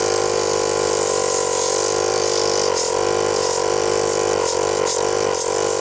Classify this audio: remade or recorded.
remade